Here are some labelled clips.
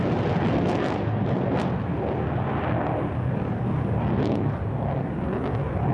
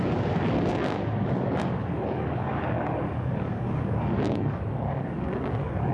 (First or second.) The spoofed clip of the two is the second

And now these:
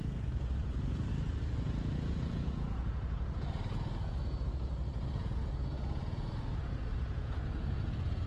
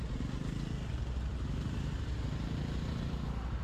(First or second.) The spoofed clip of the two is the first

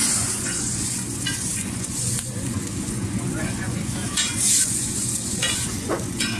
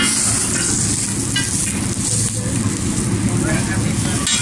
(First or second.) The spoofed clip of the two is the first